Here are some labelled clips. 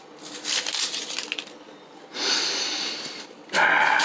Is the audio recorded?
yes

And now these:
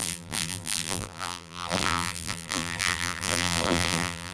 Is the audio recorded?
no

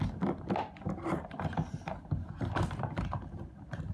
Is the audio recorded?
no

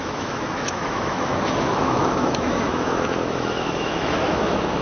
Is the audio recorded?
no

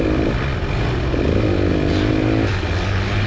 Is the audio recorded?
yes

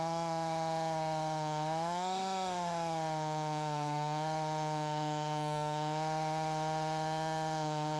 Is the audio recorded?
no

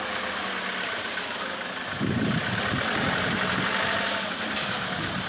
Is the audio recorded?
yes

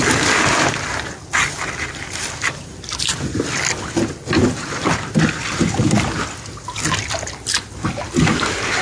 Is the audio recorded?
yes